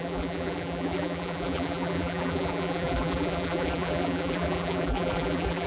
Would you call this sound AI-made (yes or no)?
yes